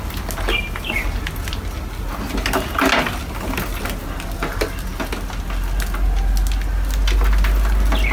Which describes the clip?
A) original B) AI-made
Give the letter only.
A